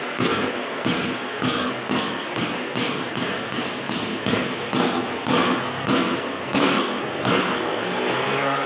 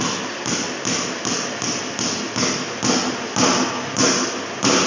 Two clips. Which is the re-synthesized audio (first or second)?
first